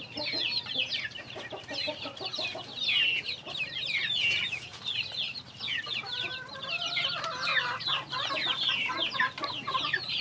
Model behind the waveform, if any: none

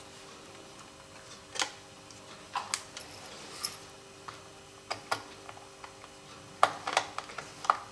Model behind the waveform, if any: none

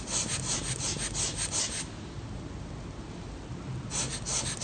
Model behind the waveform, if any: none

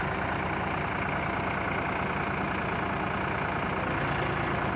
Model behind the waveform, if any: none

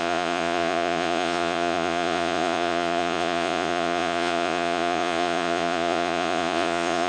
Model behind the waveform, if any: vocoder, Vocos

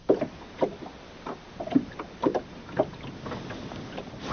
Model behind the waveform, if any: none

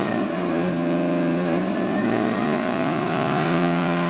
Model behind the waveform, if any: vocoder, Vocos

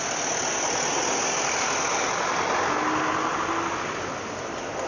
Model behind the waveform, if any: none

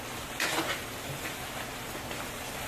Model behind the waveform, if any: none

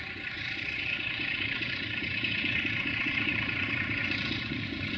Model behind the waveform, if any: vocoder, Vocos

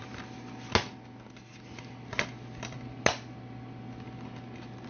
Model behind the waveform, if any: none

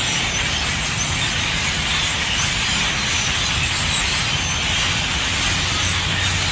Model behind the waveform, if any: none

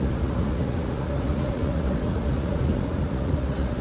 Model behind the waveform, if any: vocoder, Vocos